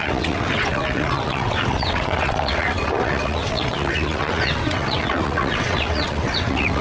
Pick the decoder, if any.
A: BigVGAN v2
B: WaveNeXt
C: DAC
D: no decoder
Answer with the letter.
B